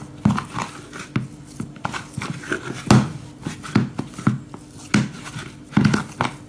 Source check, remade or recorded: recorded